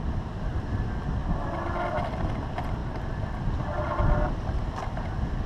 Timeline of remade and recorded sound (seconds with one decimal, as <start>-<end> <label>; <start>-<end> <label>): 0.0-5.5 recorded